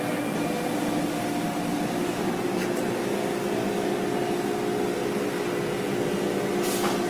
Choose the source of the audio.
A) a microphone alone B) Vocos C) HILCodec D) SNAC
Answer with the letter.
A